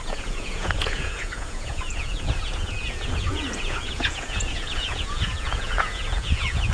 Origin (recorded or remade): remade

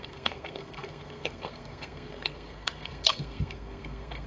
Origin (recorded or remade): remade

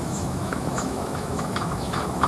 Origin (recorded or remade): remade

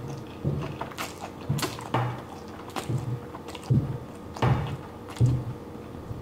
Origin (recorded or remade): recorded